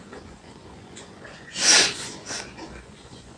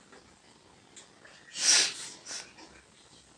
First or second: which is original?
second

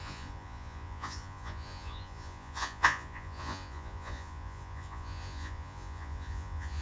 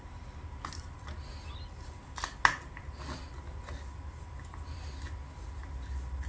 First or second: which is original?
second